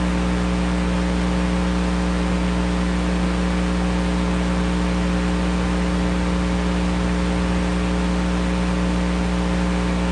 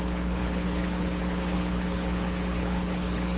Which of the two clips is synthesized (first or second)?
second